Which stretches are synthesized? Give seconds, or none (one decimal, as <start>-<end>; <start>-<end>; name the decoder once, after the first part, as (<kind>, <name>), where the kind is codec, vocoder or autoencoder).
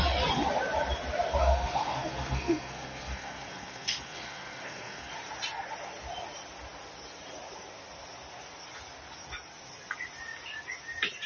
1.4-5.1 (codec, SNAC)